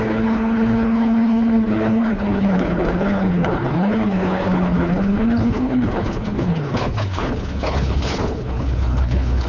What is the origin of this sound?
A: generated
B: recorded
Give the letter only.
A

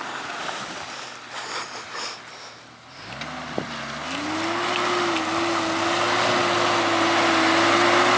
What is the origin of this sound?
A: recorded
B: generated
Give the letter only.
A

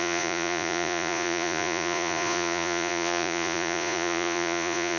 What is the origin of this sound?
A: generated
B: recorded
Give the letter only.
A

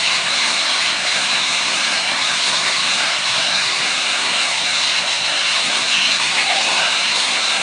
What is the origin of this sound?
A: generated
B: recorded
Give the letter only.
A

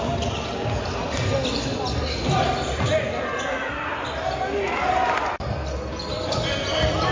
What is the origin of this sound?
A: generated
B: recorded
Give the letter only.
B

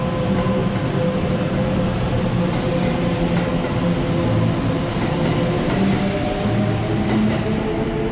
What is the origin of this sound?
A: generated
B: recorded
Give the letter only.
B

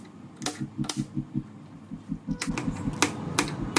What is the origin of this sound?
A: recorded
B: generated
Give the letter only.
A